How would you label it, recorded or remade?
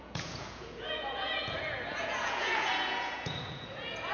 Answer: remade